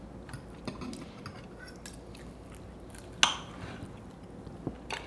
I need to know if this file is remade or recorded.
recorded